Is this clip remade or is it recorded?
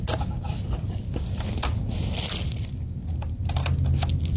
recorded